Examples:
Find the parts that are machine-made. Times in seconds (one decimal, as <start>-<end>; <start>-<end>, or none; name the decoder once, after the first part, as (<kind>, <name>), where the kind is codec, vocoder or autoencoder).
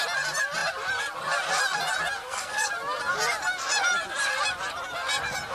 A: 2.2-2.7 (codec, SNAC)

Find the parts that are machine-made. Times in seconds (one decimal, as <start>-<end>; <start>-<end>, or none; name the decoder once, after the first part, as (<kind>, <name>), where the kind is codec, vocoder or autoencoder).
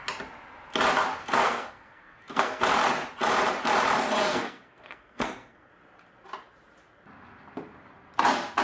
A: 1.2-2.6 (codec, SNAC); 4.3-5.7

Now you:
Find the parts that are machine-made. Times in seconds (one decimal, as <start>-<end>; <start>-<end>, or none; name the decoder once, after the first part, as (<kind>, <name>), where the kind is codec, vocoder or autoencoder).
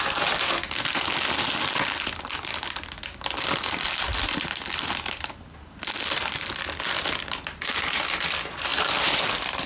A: none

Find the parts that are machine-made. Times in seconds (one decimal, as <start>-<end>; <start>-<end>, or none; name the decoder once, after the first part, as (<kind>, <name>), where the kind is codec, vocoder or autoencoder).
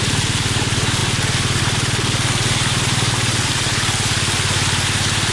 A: none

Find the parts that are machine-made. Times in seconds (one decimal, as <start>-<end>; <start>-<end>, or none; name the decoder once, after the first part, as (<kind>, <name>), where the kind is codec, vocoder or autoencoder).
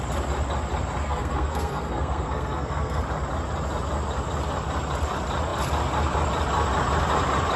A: 1.0-3.0 (codec, SNAC)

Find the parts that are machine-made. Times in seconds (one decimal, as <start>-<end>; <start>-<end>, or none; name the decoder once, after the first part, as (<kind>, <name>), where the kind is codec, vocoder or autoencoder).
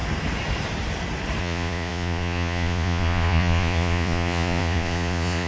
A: 1.4-5.5 (vocoder, Vocos)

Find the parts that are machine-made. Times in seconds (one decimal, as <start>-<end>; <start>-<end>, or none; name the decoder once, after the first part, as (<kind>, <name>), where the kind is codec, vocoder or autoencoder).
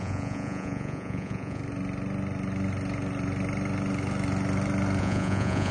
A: 0.0-1.6 (vocoder, Vocos); 5.0-5.7